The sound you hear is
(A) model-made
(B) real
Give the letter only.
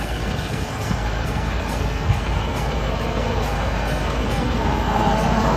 A